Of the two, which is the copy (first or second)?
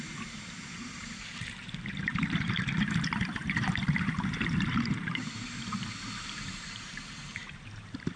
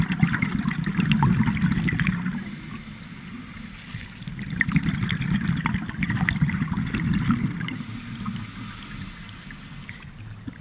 first